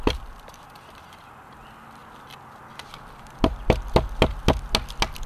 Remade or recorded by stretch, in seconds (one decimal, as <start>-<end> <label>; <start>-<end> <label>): 0.0-5.3 recorded